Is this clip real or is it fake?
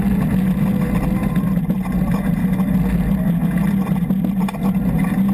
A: real